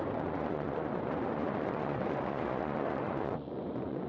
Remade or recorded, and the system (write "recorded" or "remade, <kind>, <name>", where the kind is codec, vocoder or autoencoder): remade, vocoder, Vocos